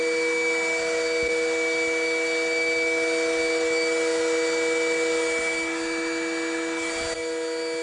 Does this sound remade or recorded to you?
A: recorded